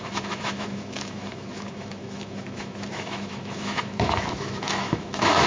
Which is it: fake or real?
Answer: fake